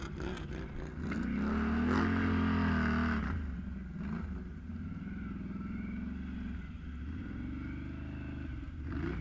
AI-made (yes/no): no